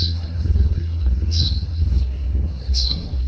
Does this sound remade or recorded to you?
remade